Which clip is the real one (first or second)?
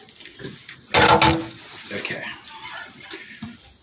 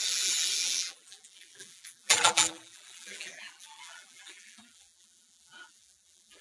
first